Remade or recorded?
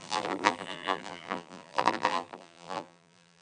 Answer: remade